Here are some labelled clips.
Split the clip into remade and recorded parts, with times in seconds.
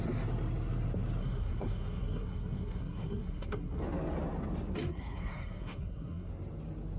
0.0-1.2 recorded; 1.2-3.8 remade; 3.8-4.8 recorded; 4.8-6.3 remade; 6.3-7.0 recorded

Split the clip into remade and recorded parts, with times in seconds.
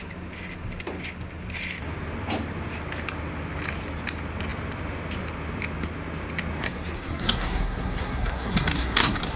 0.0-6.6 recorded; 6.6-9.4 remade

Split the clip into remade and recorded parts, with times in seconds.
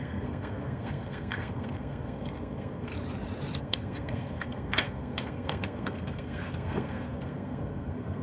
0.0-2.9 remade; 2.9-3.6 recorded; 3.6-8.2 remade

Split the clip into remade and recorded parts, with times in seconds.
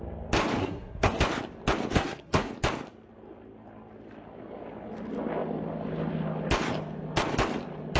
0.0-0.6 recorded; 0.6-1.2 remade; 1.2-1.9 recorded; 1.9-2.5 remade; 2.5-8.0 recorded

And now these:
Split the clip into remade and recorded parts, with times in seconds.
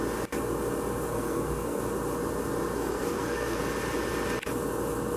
0.0-1.1 recorded; 1.1-1.8 remade; 1.8-2.7 recorded; 2.7-3.6 remade; 3.6-5.2 recorded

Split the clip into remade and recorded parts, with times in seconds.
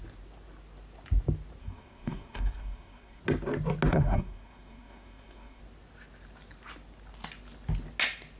0.0-1.6 recorded; 1.6-3.2 remade; 3.2-3.9 recorded; 3.9-5.6 remade; 5.6-8.4 recorded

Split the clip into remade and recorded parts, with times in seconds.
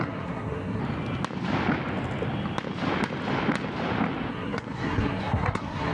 0.0-0.8 remade; 0.8-4.3 recorded; 4.3-5.9 remade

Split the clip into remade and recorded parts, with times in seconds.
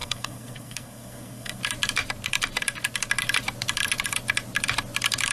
0.0-1.6 remade; 1.6-5.3 recorded